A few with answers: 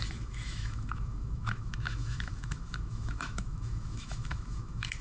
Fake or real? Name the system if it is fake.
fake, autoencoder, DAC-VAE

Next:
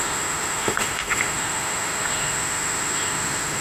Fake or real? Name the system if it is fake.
fake, autoencoder, DAC-VAE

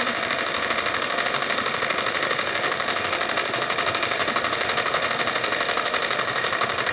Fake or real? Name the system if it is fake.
fake, autoencoder, DAC-VAE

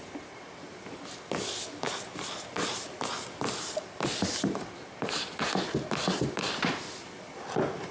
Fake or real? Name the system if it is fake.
real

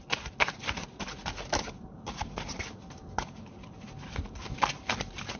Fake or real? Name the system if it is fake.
real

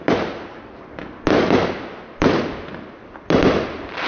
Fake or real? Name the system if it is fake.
real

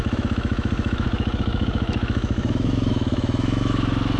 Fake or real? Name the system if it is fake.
fake, autoencoder, DAC-VAE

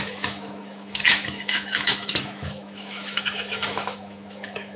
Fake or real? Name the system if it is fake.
fake, autoencoder, DAC-VAE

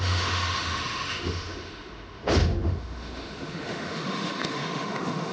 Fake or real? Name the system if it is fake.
fake, autoencoder, DAC-VAE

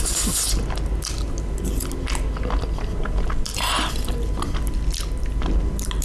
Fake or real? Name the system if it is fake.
real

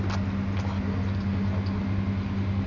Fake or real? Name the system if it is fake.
real